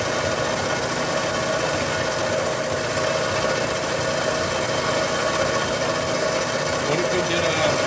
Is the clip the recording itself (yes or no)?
yes